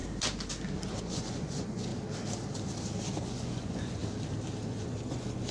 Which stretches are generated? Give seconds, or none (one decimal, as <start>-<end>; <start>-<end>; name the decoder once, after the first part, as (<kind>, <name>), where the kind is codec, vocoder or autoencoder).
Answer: 1.0-1.9 (vocoder, Vocos); 3.2-4.0; 4.7-5.5